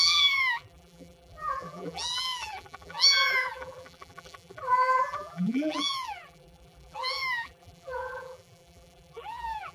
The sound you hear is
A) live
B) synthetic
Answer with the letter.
B